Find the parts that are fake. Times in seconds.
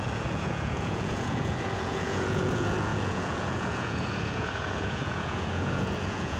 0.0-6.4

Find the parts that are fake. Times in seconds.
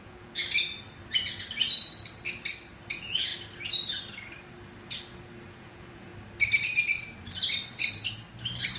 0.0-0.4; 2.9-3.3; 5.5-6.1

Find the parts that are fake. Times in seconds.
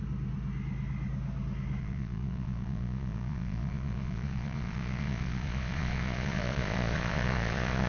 1.8-7.9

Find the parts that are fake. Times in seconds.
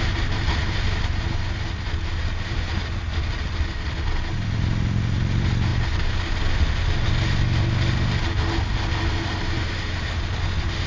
none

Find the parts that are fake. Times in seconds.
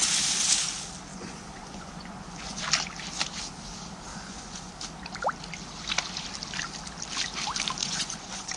1.1-2.6; 4.1-4.7; 7.8-8.6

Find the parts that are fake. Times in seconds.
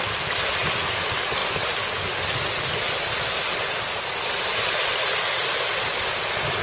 none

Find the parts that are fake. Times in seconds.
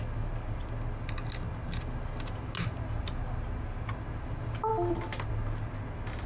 none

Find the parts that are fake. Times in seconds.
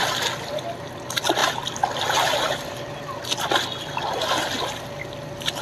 none